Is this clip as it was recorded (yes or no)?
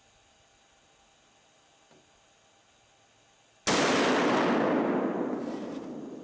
yes